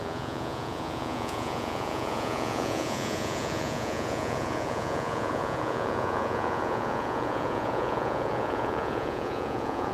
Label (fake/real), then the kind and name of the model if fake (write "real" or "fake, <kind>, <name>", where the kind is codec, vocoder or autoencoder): fake, vocoder, Vocos